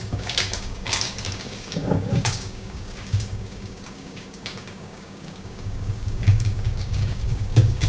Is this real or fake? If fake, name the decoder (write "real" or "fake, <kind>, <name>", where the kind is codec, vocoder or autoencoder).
fake, codec, DAC